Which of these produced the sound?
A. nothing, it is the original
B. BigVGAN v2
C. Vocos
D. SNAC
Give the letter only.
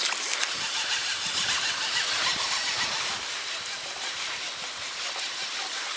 A